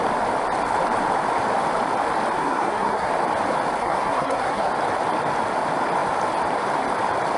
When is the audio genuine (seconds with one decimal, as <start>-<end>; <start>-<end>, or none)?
0.0-2.4; 3.1-3.8; 4.7-7.4